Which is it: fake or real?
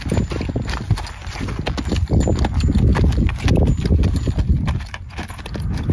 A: real